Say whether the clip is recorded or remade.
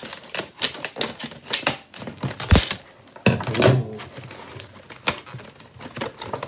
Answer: recorded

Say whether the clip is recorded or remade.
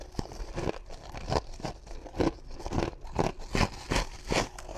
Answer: recorded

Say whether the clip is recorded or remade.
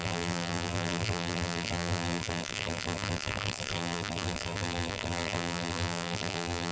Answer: remade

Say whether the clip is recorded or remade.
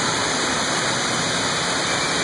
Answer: recorded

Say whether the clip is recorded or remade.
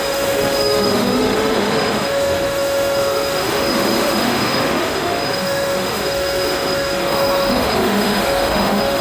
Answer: remade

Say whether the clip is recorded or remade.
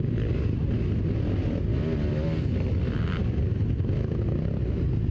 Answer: recorded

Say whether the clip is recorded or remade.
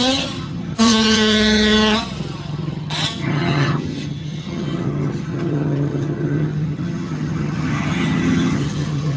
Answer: remade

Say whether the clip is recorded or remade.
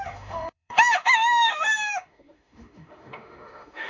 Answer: remade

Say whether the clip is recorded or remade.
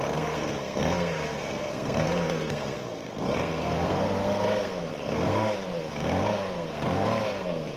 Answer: remade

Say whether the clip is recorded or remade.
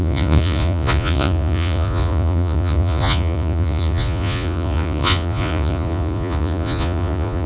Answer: remade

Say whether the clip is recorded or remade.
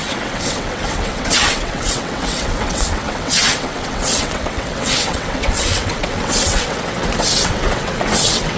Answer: remade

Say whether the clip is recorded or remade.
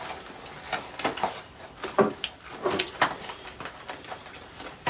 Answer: recorded